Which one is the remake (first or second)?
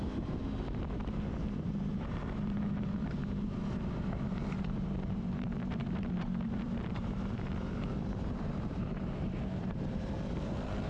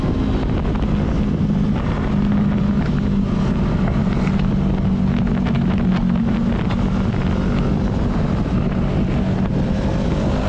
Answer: first